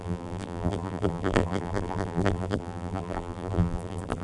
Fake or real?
fake